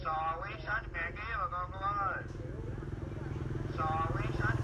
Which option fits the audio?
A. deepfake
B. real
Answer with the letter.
B